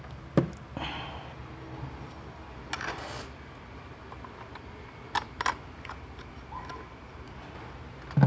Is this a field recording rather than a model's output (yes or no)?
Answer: yes